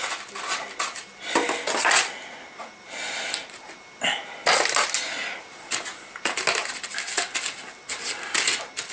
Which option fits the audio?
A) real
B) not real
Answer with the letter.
A